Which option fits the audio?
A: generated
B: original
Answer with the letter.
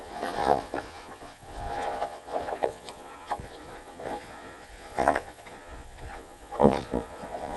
A